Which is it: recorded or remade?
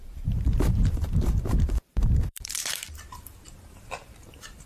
remade